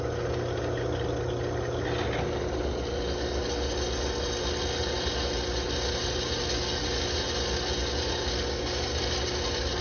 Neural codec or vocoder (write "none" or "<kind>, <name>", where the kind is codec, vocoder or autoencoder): none